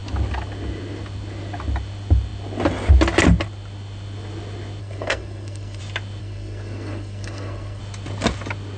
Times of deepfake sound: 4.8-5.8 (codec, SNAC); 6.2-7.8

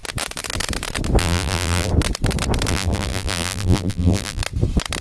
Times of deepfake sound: 1.2-1.9 (vocoder, BigVGAN v2); 2.7-4.4

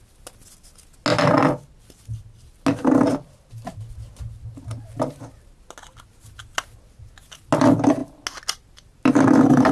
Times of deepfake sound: none

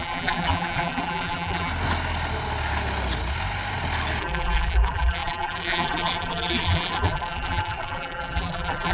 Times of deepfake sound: 0.0-1.7 (vocoder, BigVGAN v2); 4.2-8.9

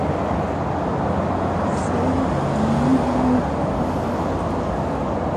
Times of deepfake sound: none

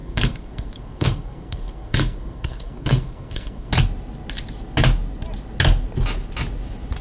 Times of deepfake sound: 0.0-3.7 (codec, SNAC)

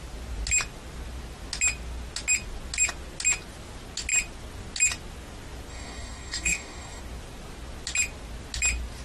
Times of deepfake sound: 5.7-7.0 (codec, DAC)